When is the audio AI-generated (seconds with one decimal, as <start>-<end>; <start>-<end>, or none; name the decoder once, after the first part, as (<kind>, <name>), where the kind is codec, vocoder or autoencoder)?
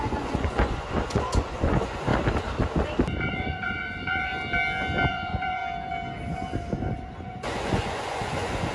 0.0-2.1 (vocoder, Vocos); 3.3-4.3; 5.1-5.6; 7.2-8.7